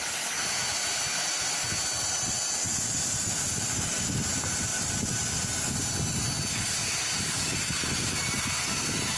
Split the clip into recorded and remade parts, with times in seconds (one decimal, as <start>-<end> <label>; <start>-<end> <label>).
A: 0.0-9.2 recorded